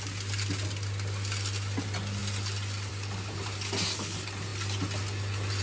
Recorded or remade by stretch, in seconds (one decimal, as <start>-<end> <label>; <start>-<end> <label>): 0.0-5.6 recorded